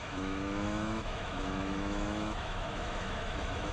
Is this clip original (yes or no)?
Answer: no